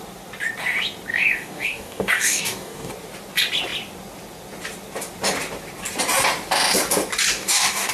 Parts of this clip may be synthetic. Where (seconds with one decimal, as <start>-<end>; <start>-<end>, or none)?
1.1-2.9; 7.3-7.9